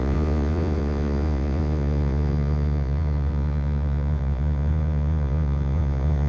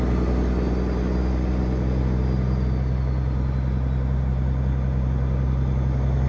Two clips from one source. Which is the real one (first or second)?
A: second